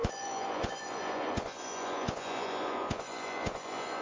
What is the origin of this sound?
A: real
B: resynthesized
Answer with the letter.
B